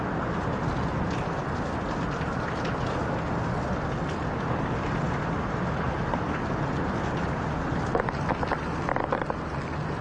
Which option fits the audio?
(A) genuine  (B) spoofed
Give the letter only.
A